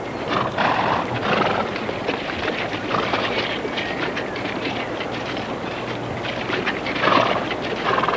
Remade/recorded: recorded